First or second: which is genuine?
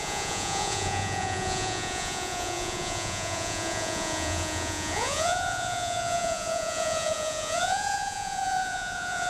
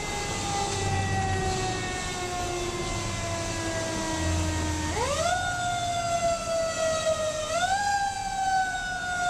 second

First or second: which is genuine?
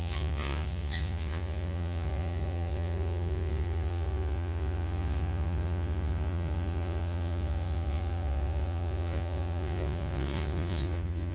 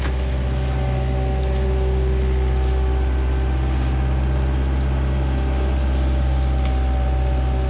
second